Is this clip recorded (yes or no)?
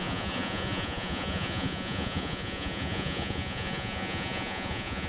no